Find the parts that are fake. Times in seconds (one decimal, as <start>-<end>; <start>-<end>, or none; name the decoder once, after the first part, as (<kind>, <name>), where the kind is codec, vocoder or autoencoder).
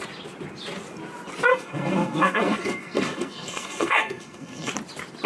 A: 1.5-4.7 (codec, SNAC)